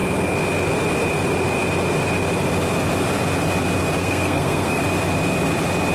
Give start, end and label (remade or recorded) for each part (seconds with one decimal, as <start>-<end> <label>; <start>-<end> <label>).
0.0-4.0 recorded; 4.0-4.8 remade; 4.8-5.9 recorded